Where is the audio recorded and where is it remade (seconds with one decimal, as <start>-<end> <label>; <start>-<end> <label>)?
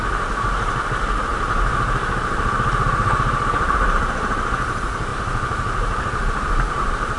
0.0-1.3 recorded; 1.3-4.0 remade; 4.0-5.1 recorded; 5.1-7.2 remade